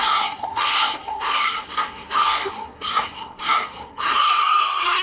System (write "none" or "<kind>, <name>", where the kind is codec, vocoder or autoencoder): codec, SNAC